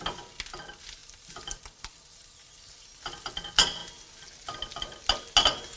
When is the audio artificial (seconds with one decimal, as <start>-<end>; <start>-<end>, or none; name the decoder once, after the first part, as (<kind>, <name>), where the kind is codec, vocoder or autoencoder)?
1.0-3.3 (vocoder, BigVGAN v2)